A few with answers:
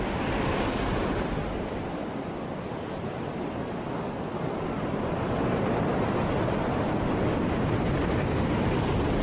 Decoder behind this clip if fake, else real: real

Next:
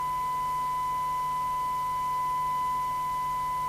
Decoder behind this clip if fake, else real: real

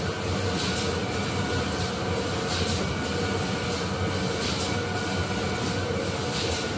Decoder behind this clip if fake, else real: real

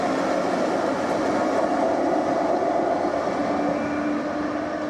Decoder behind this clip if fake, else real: real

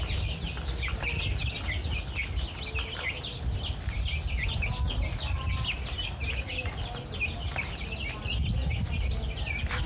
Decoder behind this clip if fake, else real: real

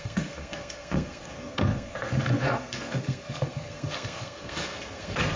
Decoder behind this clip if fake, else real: fake, codec, SNAC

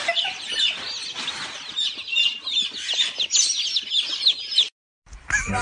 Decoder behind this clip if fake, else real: real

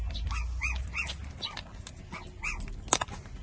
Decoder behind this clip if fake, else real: real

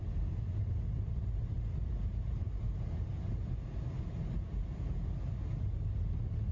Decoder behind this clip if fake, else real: real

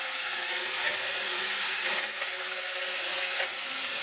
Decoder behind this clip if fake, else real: fake, codec, SNAC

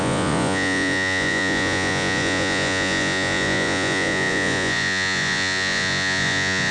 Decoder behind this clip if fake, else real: fake, vocoder, Vocos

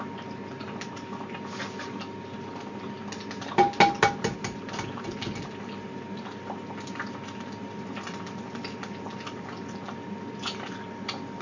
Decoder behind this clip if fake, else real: real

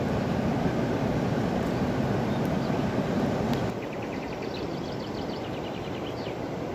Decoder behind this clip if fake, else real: fake, vocoder, BigVGAN v2